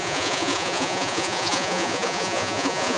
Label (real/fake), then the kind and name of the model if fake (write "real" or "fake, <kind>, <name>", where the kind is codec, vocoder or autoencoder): fake, vocoder, Vocos